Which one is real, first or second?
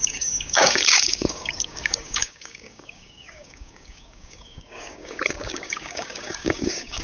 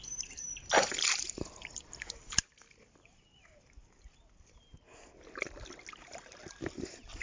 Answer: second